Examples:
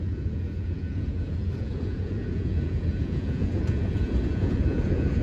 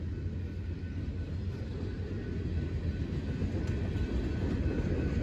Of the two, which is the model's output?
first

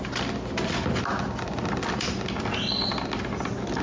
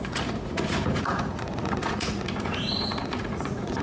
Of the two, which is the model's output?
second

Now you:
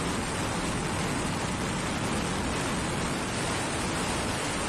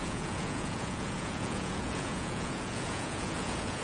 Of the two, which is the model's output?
second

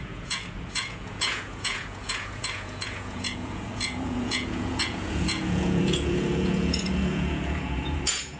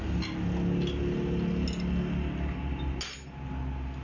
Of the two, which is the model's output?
first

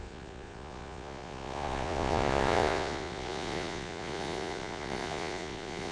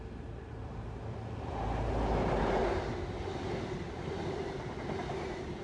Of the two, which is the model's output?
first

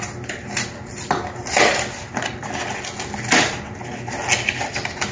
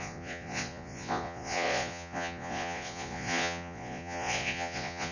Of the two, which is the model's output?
second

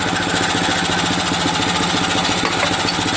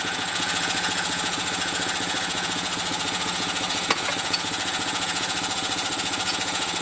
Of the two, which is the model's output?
second